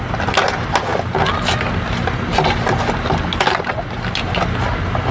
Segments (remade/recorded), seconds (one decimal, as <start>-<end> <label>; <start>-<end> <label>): 0.0-5.1 recorded